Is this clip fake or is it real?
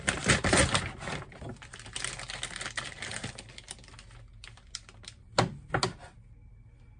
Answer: real